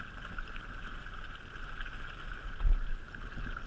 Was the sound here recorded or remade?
recorded